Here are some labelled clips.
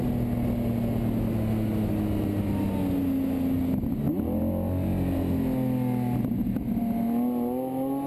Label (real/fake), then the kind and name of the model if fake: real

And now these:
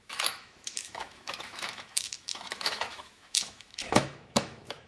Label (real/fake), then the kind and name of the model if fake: fake, autoencoder, DAC-VAE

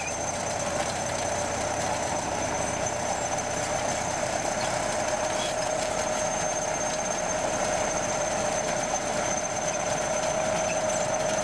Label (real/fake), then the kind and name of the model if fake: fake, vocoder, BigVGAN v2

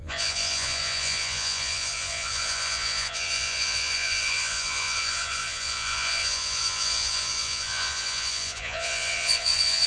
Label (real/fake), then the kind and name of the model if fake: fake, vocoder, Vocos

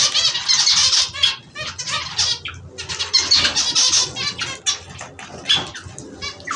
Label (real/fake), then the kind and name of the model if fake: real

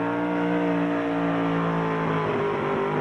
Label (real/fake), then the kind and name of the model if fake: real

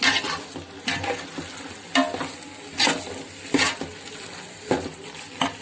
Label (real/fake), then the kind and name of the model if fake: real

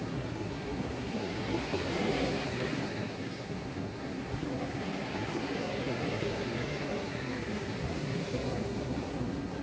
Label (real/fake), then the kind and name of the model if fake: fake, codec, SNAC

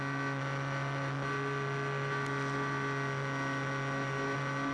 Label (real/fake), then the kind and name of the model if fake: real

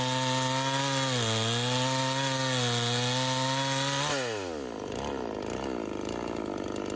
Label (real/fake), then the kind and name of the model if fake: real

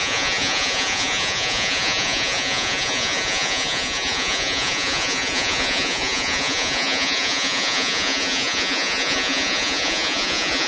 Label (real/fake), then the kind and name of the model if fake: fake, vocoder, Vocos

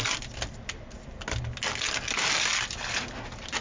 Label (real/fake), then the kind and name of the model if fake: real